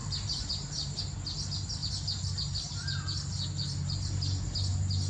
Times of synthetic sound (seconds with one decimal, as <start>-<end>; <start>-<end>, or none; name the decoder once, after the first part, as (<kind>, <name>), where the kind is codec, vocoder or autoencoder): 0.0-1.0 (vocoder, BigVGAN v2)